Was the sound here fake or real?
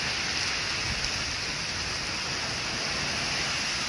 real